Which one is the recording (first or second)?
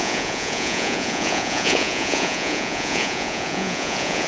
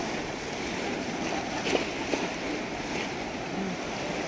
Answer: second